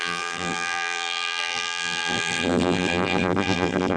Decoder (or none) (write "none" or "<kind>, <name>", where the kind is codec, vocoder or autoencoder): vocoder, BigVGAN v2